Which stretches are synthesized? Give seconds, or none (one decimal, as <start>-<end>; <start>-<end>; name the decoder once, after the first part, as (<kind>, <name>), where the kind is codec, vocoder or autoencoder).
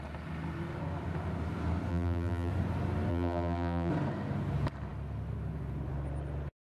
1.9-2.5 (vocoder, BigVGAN v2); 3.1-3.9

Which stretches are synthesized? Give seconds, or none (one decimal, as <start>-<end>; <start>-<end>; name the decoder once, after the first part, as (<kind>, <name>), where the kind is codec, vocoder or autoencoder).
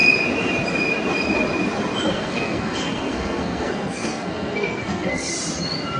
2.1-5.3 (codec, SNAC)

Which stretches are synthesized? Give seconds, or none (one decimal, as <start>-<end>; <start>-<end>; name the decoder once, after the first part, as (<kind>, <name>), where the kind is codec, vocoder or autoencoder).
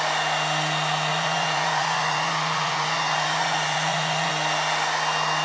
1.1-4.3 (vocoder, Vocos)